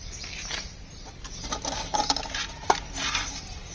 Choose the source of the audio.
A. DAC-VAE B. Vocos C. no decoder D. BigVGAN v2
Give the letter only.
C